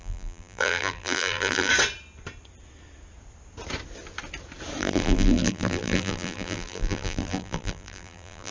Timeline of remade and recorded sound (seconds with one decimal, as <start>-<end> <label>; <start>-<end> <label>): 0.0-1.7 remade; 1.7-4.8 recorded; 4.8-8.5 remade